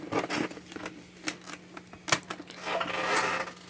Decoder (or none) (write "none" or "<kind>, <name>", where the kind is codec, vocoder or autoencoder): none